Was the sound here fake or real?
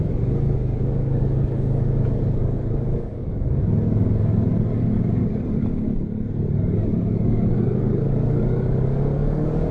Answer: fake